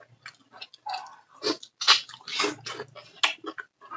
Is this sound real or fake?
real